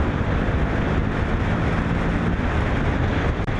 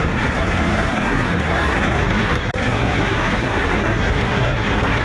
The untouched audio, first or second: first